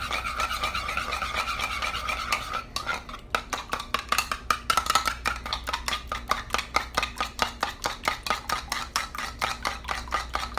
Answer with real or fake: real